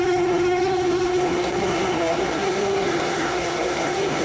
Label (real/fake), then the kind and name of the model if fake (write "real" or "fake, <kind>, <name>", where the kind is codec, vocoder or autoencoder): fake, codec, SNAC